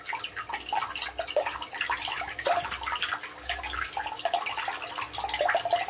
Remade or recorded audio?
recorded